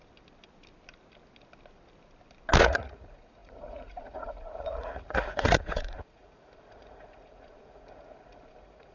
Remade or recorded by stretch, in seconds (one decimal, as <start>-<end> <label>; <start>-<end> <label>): 0.0-2.6 recorded; 2.6-8.9 remade